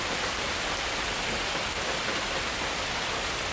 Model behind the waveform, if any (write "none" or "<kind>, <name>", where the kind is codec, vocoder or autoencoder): none